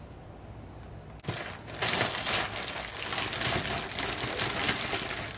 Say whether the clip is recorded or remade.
recorded